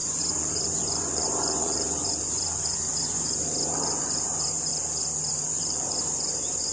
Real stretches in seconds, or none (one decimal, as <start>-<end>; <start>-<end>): 4.7-5.3

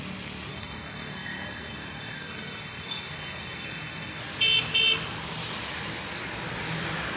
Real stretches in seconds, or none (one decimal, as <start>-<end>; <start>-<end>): 0.0-0.5; 4.2-7.2

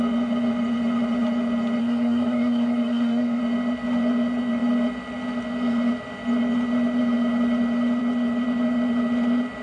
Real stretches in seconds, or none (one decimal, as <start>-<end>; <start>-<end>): 0.0-1.8; 3.4-9.6

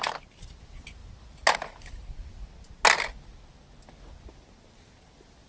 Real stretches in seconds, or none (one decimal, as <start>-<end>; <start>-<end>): 0.0-5.5

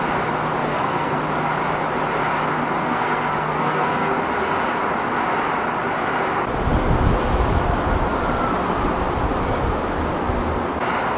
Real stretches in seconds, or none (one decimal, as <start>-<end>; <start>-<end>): 0.0-0.6; 1.2-2.8; 4.1-11.2